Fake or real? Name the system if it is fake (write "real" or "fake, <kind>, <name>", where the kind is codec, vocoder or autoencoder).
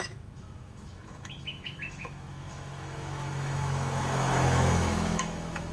fake, autoencoder, DAC-VAE